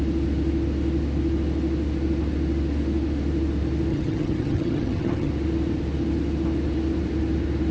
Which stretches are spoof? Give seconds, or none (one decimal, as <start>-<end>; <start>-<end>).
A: 3.9-5.3